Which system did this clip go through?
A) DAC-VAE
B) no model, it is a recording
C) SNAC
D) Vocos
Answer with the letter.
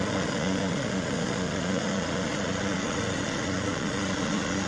D